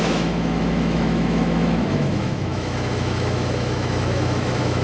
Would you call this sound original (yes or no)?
no